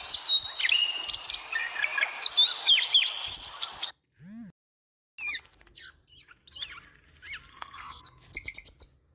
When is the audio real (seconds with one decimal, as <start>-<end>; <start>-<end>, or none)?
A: 0.0-7.5; 8.0-9.1